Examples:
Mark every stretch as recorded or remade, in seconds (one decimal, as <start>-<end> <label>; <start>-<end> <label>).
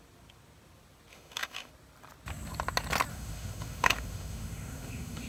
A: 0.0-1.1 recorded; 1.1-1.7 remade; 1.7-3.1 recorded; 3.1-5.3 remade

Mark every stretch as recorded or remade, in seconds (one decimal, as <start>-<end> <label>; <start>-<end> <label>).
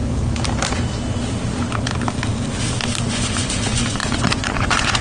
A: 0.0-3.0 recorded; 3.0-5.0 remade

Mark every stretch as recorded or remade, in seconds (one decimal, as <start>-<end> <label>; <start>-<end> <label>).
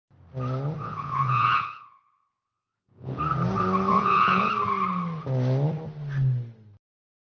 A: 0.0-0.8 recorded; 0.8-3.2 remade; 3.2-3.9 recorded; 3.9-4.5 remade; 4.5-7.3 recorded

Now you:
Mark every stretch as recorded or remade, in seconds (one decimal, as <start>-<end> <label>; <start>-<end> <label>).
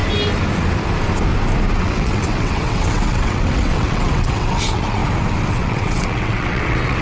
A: 0.0-1.8 recorded; 1.8-5.0 remade; 5.0-5.5 recorded; 5.5-7.0 remade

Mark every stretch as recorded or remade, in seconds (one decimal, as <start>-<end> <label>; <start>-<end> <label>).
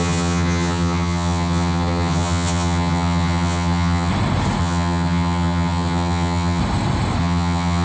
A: 0.0-4.1 remade; 4.1-4.6 recorded; 4.6-6.6 remade; 6.6-7.2 recorded; 7.2-7.8 remade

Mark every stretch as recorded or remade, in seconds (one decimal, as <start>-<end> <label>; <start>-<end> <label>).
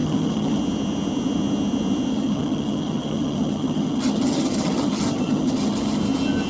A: 0.0-0.6 remade; 0.6-2.1 recorded; 2.1-6.0 remade; 6.0-6.5 recorded